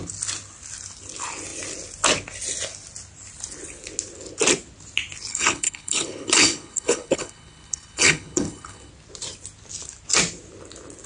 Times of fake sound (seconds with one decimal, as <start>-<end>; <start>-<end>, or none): 5.3-8.9